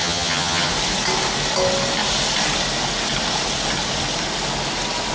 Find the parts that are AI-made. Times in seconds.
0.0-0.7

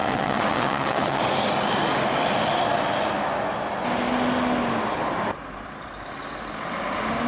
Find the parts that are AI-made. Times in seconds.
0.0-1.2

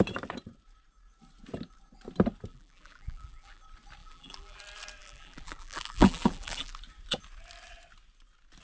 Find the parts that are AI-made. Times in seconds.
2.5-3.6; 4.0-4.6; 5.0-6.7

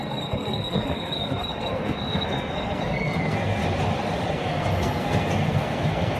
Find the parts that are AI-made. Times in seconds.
0.0-3.6; 4.3-6.2

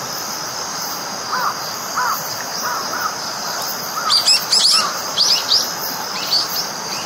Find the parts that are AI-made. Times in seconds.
2.5-3.1

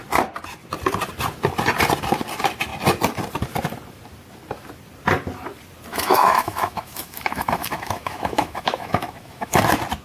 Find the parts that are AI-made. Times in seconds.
5.9-9.6

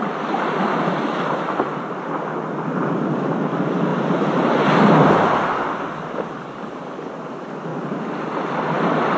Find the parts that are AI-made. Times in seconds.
none